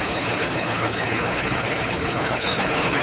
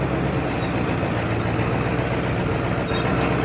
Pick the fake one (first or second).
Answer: first